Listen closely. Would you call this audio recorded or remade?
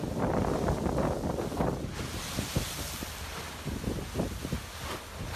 recorded